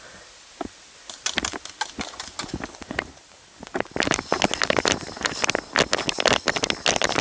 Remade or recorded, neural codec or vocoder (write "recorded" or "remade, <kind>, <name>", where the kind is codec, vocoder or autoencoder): recorded